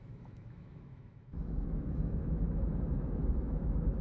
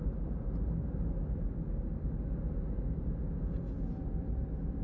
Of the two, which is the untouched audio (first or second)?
second